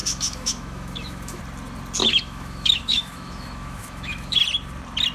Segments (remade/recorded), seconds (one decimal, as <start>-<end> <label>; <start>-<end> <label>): 0.0-1.4 remade; 1.4-2.0 recorded; 2.0-4.4 remade; 4.4-5.1 recorded